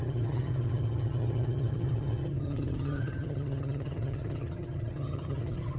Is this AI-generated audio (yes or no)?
yes